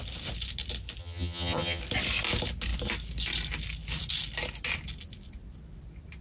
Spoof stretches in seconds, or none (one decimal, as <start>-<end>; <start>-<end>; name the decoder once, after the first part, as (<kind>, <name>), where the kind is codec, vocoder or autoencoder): 1.0-1.8 (vocoder, HiFi-GAN)